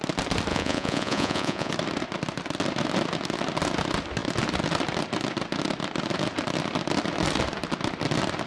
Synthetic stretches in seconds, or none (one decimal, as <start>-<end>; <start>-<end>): 0.5-1.7